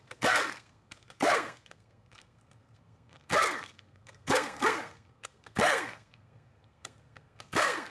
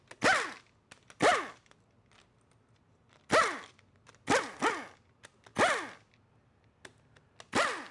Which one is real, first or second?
second